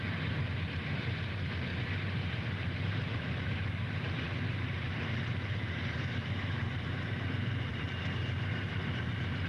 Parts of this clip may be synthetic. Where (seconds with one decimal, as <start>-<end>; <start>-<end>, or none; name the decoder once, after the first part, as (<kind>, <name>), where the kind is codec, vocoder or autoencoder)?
0.0-1.7 (vocoder, BigVGAN v2); 2.4-9.5